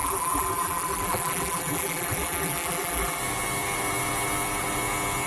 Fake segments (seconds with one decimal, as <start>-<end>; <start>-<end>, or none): 0.0-3.2